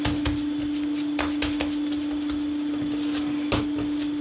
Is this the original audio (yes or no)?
yes